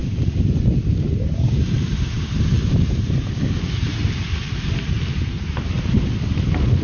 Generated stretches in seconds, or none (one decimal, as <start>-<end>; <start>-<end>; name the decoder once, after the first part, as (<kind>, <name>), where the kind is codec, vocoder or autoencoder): 0.9-6.8 (vocoder, BigVGAN v2)